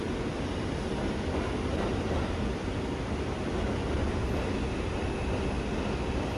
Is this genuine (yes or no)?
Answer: yes